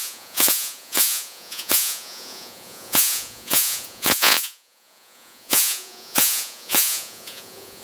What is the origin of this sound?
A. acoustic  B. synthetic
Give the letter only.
B